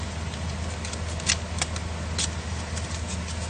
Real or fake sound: real